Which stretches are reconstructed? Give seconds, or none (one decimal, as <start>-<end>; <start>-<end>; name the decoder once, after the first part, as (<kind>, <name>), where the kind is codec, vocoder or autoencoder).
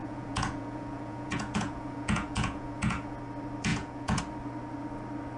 0.0-3.2 (vocoder, Vocos); 3.7-4.2